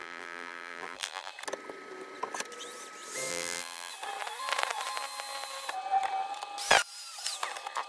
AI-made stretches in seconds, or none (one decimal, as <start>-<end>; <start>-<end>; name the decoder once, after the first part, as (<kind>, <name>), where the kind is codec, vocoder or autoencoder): 0.0-1.3 (vocoder, BigVGAN v2); 3.3-3.9